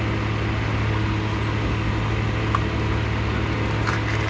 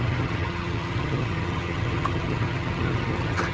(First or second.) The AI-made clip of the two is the second